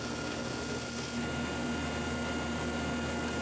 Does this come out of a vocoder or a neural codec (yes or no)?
no